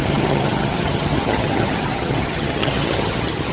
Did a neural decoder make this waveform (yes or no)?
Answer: yes